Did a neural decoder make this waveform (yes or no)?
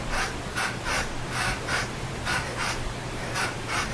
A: no